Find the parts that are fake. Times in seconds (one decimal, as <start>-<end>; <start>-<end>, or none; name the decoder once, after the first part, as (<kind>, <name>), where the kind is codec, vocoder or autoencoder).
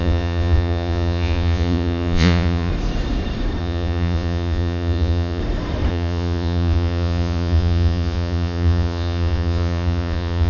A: 0.0-2.7 (vocoder, Vocos); 3.6-5.4; 5.9-10.5